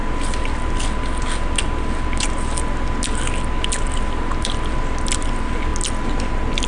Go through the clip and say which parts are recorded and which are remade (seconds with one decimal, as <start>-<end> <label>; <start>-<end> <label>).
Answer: 0.0-6.7 recorded